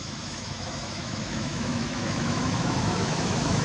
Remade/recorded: remade